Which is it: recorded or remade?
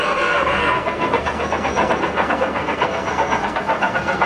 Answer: remade